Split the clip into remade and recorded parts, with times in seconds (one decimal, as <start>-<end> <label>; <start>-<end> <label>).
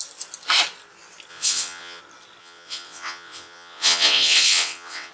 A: 0.0-1.3 recorded; 1.3-2.0 remade; 2.0-2.4 recorded; 2.4-5.1 remade